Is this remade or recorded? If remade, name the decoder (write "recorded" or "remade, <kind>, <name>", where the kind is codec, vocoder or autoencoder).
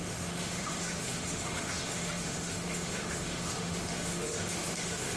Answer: remade, autoencoder, DAC-VAE